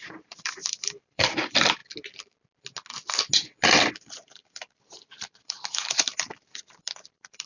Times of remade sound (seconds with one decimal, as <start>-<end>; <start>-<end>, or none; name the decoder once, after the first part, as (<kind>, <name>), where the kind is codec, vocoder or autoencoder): 0.0-1.8 (vocoder, BigVGAN v2); 3.9-7.5